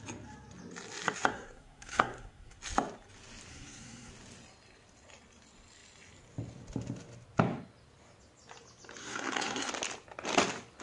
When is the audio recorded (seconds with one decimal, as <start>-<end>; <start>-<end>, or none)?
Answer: 0.0-1.3; 2.6-3.5; 4.1-9.0; 9.7-10.8